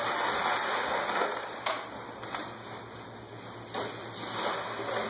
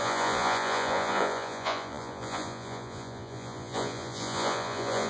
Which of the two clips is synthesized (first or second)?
second